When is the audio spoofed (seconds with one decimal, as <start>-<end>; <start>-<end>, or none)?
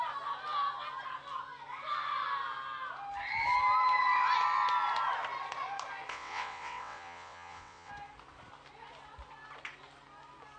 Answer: 6.1-7.9